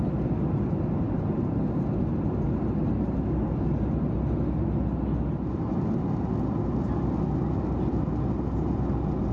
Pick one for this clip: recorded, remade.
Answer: recorded